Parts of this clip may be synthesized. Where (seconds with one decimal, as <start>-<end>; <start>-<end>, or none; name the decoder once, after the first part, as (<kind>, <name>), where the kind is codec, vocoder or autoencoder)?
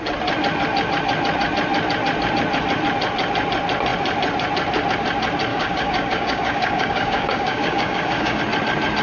5.5-8.4 (codec, DAC)